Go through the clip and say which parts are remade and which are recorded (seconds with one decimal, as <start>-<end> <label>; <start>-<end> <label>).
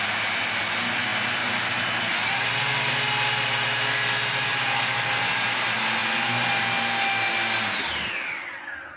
0.0-9.0 recorded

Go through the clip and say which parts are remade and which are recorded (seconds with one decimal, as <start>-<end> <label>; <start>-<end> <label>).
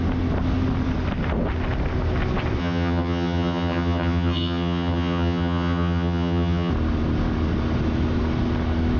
0.0-2.6 recorded; 2.6-6.7 remade; 6.7-9.0 recorded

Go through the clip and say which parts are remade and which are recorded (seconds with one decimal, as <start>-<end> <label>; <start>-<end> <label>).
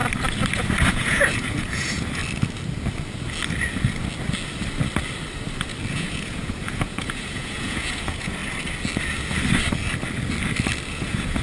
0.0-0.9 recorded; 0.9-2.2 remade; 2.2-5.9 recorded; 5.9-8.4 remade; 8.4-10.9 recorded; 10.9-11.4 remade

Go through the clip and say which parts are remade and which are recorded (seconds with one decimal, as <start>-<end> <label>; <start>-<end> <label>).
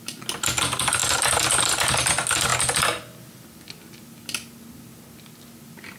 0.0-6.0 recorded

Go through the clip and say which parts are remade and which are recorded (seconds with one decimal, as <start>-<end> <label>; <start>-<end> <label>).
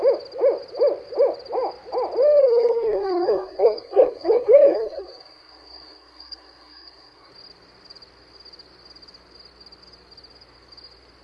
0.0-2.4 recorded; 2.4-7.3 remade; 7.3-11.2 recorded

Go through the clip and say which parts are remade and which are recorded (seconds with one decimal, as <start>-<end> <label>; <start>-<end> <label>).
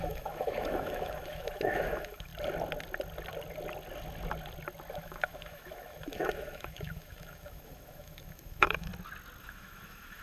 0.0-2.3 remade; 2.3-4.9 recorded; 4.9-8.9 remade; 8.9-9.4 recorded; 9.4-10.2 remade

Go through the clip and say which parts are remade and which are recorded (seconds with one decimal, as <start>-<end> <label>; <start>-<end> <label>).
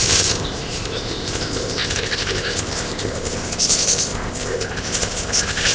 0.0-5.7 remade